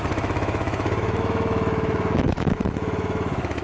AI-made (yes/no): yes